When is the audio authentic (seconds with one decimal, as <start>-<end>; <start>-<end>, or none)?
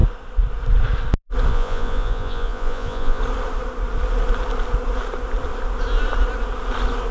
0.0-1.5; 3.2-7.1